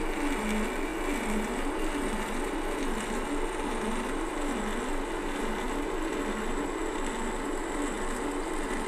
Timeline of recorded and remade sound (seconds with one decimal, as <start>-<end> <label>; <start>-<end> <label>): 0.0-8.9 recorded